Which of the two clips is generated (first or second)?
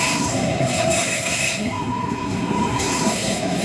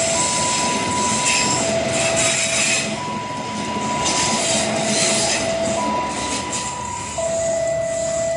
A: first